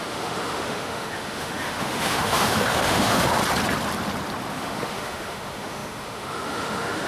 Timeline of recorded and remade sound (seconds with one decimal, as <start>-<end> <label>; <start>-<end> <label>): 0.0-3.4 remade; 3.4-4.5 recorded; 4.5-7.1 remade

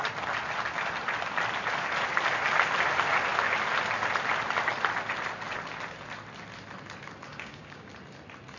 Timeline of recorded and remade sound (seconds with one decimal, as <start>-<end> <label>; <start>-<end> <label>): 0.0-7.3 recorded; 7.3-7.9 remade; 7.9-8.6 recorded

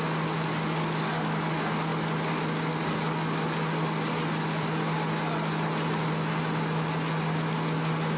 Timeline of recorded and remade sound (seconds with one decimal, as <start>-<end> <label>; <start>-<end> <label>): 0.0-8.2 recorded

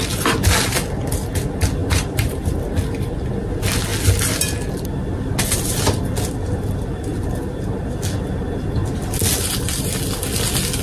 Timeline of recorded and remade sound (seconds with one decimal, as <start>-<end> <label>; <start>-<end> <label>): 0.0-1.8 recorded; 1.8-2.5 remade; 2.5-10.8 recorded

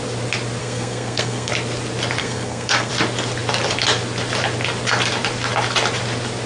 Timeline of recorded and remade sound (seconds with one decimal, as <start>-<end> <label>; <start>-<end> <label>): 0.0-0.6 recorded; 0.6-1.5 remade; 1.5-2.2 recorded; 2.2-2.9 remade; 2.9-6.5 recorded